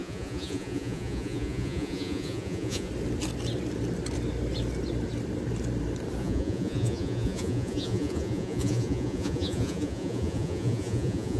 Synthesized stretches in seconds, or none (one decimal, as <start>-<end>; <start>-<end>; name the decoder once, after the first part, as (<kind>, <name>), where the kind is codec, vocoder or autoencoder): 0.0-2.9 (vocoder, Vocos); 6.2-11.4

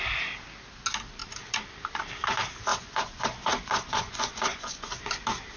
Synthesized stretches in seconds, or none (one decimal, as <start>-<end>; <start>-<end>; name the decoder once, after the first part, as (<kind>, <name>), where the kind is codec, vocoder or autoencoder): 2.7-5.1 (vocoder, Vocos)

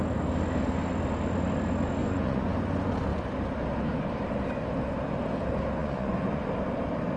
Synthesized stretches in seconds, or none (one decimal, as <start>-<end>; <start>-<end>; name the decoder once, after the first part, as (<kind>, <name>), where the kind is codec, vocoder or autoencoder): 2.0-2.5 (vocoder, Vocos); 5.8-6.4

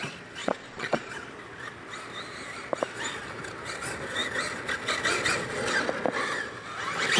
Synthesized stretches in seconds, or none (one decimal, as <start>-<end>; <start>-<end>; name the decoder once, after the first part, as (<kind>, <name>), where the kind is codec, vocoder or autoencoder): 0.4-1.1 (vocoder, Vocos)